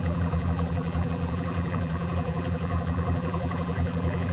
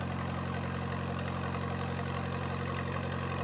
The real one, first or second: second